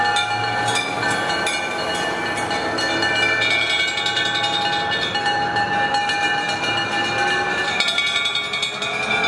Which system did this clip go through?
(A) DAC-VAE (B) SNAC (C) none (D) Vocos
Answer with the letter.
C